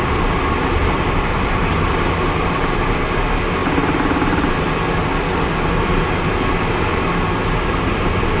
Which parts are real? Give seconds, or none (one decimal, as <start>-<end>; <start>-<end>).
0.0-0.8; 1.7-8.4